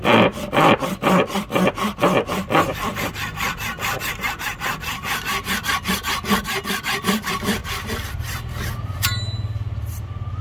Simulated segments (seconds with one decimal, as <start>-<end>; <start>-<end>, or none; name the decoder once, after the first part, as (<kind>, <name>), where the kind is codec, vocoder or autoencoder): 0.0-10.4 (vocoder, BigVGAN v2)